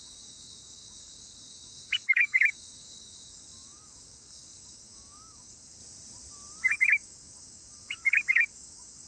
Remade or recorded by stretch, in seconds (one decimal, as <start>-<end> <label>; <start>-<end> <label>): 0.0-5.8 remade; 5.8-6.7 recorded; 6.7-9.1 remade